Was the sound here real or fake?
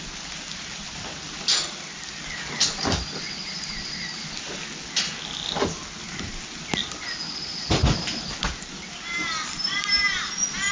real